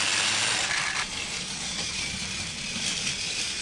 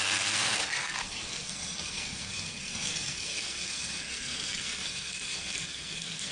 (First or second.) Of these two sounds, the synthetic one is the second